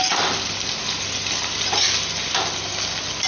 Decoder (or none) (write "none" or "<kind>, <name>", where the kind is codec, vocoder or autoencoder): none